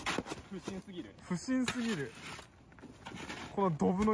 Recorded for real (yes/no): yes